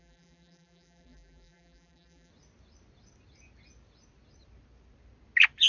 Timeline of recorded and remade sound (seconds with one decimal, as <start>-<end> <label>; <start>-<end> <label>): 0.0-2.3 remade; 2.3-5.7 recorded